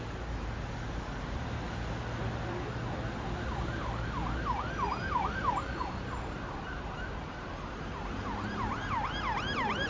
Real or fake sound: real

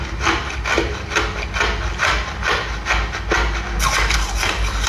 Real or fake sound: real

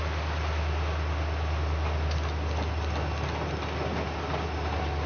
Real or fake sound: real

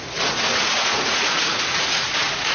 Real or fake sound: fake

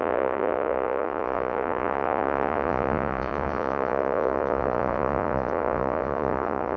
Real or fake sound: fake